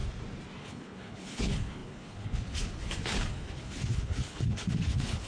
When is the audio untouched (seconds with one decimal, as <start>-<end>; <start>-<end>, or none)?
0.0-0.6